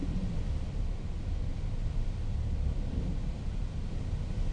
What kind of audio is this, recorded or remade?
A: recorded